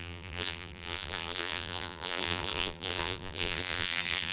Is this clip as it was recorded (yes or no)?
no